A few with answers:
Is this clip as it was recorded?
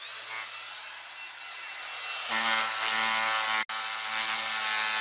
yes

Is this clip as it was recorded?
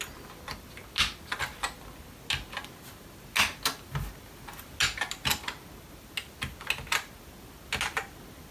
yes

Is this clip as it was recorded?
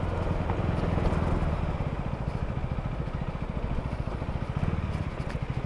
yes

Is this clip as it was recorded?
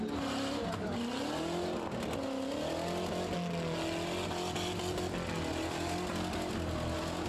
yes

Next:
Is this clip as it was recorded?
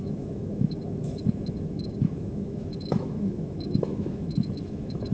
no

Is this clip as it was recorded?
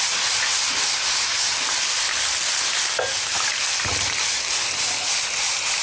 yes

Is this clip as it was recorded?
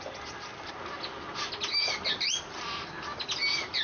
yes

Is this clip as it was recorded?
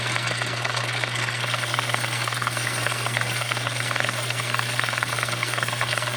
no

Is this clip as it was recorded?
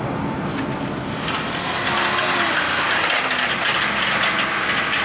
yes